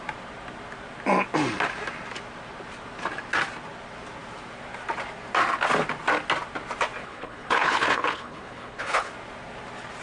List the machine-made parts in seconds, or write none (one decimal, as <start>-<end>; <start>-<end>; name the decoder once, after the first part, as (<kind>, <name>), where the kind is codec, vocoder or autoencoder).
7.0-9.1 (codec, HILCodec)